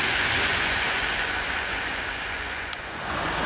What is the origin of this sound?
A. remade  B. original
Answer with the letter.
A